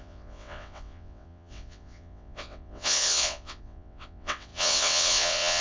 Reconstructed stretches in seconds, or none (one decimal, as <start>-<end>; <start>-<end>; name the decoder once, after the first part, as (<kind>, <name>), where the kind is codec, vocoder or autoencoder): 0.0-5.6 (vocoder, WaveNeXt)